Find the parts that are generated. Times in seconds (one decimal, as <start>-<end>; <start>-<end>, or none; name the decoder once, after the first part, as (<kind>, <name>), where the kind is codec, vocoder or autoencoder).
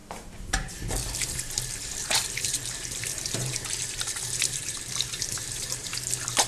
0.0-0.7 (vocoder, BigVGAN v2); 2.0-5.9